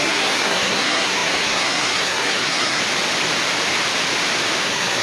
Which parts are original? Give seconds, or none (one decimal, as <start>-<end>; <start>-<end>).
2.8-4.6